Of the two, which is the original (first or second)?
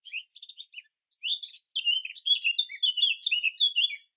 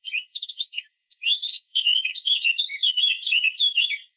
first